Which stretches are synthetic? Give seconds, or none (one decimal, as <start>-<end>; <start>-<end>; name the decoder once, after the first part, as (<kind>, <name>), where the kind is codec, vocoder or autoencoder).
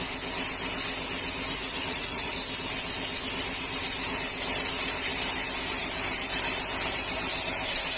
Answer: 1.5-2.3 (vocoder, Vocos)